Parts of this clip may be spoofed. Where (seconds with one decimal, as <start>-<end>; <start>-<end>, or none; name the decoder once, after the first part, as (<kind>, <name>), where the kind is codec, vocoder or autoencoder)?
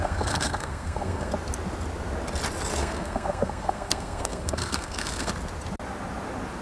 0.0-1.3 (codec, SNAC); 2.8-5.3